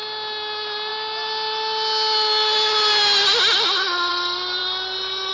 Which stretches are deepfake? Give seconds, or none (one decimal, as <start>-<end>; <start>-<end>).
none

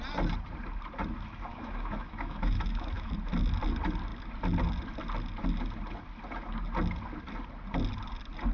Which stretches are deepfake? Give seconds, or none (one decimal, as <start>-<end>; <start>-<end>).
1.5-3.1

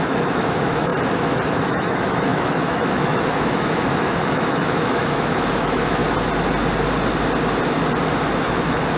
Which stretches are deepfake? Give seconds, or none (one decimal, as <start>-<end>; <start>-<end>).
0.0-0.9; 1.5-6.0; 8.5-9.0

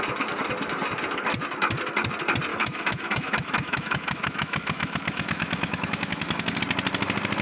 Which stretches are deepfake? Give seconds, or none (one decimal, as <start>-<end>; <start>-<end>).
2.5-6.6

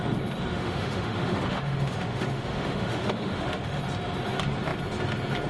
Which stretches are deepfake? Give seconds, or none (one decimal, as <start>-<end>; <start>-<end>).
0.5-3.8

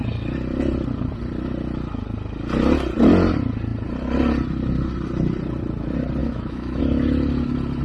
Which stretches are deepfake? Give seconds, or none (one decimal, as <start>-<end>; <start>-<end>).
6.2-6.8

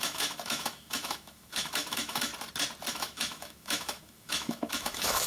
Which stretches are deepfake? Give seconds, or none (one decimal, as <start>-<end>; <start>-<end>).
0.0-2.3; 2.9-5.3

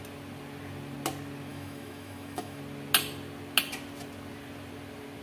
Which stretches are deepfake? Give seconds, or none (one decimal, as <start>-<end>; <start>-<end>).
1.5-2.6